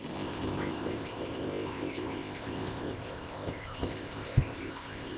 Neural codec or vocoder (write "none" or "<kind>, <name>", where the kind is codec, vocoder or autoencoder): codec, ZipCodec